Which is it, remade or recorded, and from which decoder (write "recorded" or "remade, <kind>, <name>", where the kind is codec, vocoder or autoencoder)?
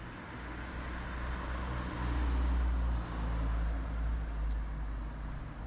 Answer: recorded